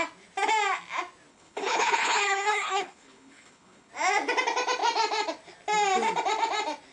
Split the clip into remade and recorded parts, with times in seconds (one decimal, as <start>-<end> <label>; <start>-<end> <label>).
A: 0.0-1.3 recorded; 1.3-3.9 remade; 3.9-6.9 recorded